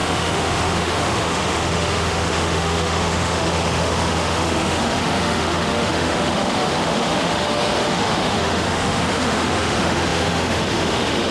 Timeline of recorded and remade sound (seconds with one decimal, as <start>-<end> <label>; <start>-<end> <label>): 0.0-11.3 remade

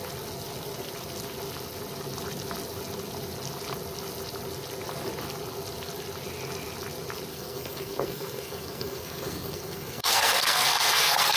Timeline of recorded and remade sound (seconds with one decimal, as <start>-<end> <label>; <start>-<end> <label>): 0.0-7.3 recorded; 7.3-11.4 remade

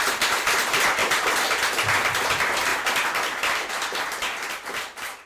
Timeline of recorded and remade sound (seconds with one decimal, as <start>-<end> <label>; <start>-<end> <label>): 0.0-5.3 recorded

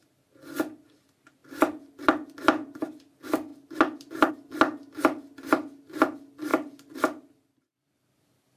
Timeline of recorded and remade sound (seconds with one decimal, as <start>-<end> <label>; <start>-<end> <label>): 0.0-1.4 recorded; 1.4-3.0 remade; 3.0-3.5 recorded; 3.5-4.3 remade; 4.3-6.5 recorded; 6.5-8.1 remade; 8.1-8.6 recorded

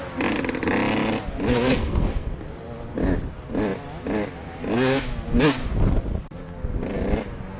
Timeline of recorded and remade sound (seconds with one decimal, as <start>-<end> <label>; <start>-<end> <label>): 0.0-1.5 recorded; 1.5-2.3 remade; 2.3-7.6 recorded

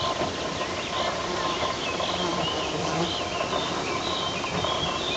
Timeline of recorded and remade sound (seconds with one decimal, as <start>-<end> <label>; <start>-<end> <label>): 0.0-5.2 recorded

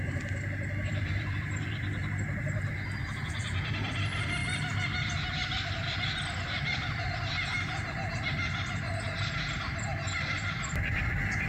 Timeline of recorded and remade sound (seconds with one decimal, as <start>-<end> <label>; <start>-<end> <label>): 0.0-2.0 remade; 2.0-3.7 recorded; 3.7-4.4 remade; 4.4-9.6 recorded; 9.6-11.5 remade